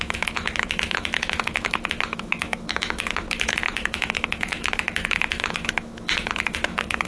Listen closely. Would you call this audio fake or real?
fake